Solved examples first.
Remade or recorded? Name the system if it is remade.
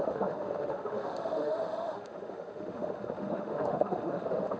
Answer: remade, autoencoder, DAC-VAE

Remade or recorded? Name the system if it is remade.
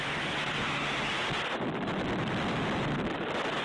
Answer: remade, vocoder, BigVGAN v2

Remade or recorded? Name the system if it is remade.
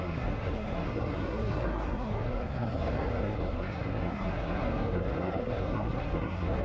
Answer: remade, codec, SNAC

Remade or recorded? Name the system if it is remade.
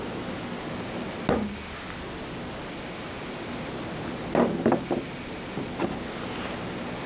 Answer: recorded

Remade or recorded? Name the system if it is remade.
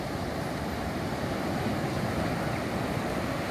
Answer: recorded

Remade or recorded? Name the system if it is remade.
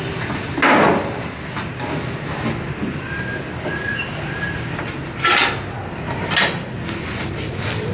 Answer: recorded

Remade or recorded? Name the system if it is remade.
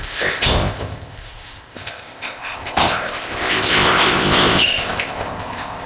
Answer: remade, codec, ZipCodec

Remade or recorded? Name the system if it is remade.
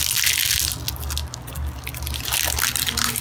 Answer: recorded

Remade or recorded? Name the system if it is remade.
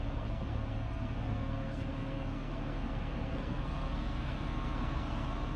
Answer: remade, codec, SNAC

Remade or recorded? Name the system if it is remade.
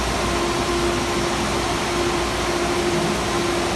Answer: recorded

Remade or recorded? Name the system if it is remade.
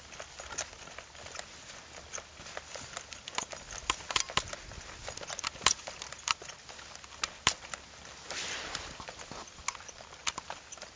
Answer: recorded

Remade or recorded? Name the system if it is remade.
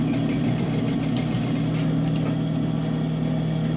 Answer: recorded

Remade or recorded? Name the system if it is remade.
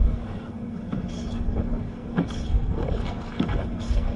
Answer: remade, codec, SNAC